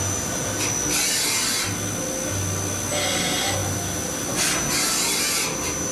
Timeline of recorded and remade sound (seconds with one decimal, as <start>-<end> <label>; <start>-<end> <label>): 0.0-5.9 recorded